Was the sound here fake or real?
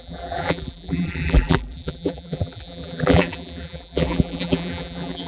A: fake